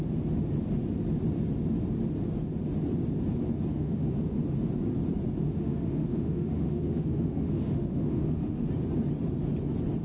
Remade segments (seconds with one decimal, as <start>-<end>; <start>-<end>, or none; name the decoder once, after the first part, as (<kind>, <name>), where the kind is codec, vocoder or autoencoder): 3.7-4.4 (autoencoder, DAC-VAE); 5.4-8.7